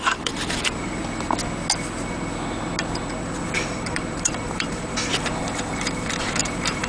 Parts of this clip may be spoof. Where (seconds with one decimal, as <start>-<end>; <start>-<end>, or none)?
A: 0.0-1.0; 3.2-6.9